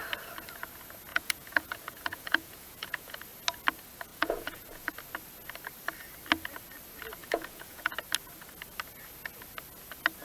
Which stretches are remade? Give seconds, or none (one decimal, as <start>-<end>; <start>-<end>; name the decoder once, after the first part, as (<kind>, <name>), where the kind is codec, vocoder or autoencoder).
1.1-3.2 (vocoder, Vocos); 4.1-4.9; 7.2-7.9